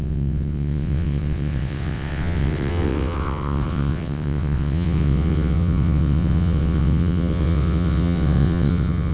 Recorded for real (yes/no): no